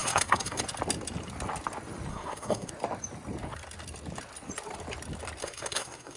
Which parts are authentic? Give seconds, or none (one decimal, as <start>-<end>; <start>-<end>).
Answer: 0.6-2.1; 2.7-5.4